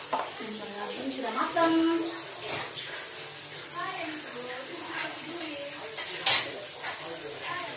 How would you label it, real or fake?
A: real